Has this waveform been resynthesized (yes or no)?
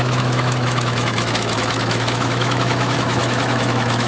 yes